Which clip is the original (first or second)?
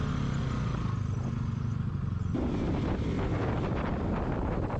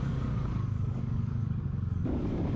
first